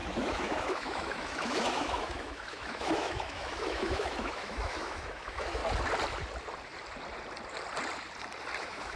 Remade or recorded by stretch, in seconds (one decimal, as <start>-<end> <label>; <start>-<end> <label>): 0.0-5.6 remade; 5.6-8.6 recorded; 8.6-9.0 remade

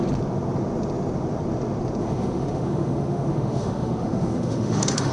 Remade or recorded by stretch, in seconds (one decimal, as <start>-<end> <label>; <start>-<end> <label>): 0.0-2.0 recorded; 2.0-5.1 remade

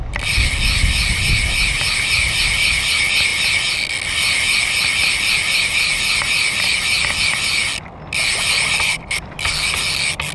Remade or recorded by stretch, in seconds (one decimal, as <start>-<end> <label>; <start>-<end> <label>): 0.0-10.3 recorded

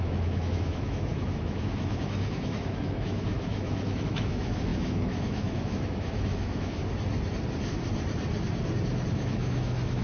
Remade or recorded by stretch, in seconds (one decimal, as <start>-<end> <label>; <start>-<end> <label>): 0.0-6.8 remade; 6.8-9.1 recorded; 9.1-10.0 remade